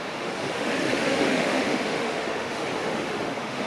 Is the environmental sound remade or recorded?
remade